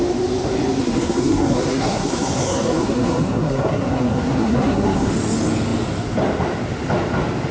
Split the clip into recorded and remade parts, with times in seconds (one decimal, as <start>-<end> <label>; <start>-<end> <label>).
0.0-0.8 recorded; 0.8-5.1 remade; 5.1-7.5 recorded